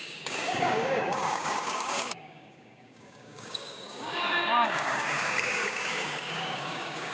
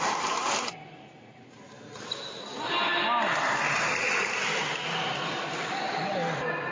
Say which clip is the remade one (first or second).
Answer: first